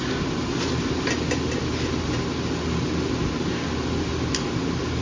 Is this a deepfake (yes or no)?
no